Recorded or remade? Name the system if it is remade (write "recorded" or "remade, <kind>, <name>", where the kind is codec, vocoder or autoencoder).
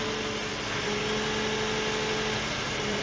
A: remade, vocoder, BigVGAN v2